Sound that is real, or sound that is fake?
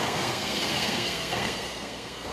fake